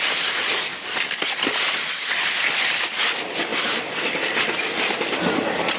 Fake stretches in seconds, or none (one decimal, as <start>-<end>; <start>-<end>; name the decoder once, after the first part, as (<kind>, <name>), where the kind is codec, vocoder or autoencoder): 0.0-3.5 (vocoder, BigVGAN v2); 4.1-5.8